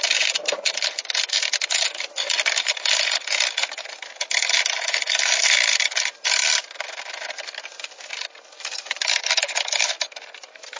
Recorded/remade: recorded